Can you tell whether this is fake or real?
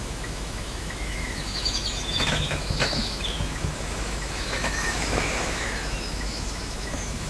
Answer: fake